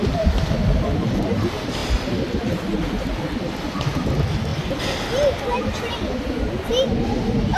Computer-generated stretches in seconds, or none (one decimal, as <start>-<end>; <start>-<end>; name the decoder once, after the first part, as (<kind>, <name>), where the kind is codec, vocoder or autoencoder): 1.8-3.2 (vocoder, BigVGAN v2); 4.5-5.0